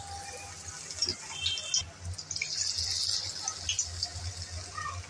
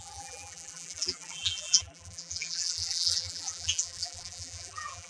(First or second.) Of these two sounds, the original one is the first